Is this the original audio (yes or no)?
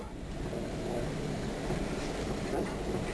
yes